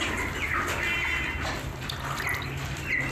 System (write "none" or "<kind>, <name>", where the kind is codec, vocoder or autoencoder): none